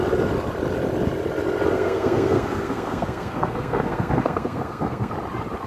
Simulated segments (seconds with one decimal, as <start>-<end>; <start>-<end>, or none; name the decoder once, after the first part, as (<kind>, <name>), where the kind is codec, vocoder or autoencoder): 1.7-5.1 (codec, SNAC)